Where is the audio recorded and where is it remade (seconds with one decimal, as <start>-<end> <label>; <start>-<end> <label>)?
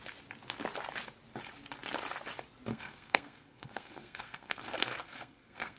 0.0-2.7 recorded; 2.7-5.8 remade